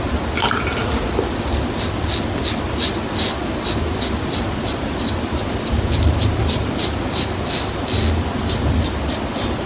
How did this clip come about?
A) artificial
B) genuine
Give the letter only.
B